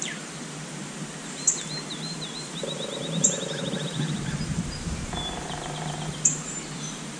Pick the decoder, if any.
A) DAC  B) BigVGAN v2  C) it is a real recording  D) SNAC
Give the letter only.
B